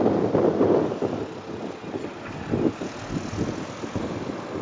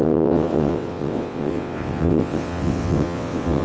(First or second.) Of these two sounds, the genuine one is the first